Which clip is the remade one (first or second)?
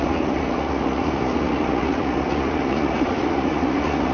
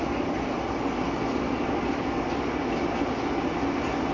first